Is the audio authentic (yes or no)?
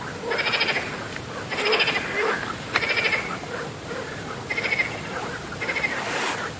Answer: yes